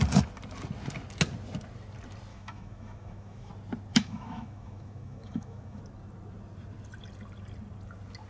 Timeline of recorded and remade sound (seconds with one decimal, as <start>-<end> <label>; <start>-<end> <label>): 0.0-2.3 recorded; 2.3-3.5 remade; 3.5-3.9 recorded; 3.9-5.8 remade; 5.8-8.3 recorded